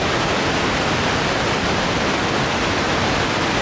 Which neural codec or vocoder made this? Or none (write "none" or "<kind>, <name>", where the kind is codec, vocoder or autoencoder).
none